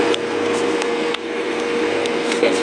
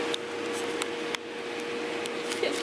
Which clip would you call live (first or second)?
second